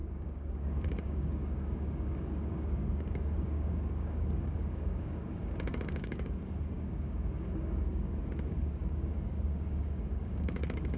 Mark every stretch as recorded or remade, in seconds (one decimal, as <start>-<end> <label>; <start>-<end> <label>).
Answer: 0.0-11.0 remade